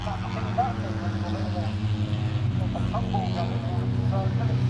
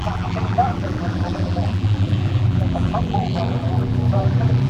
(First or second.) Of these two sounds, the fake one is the second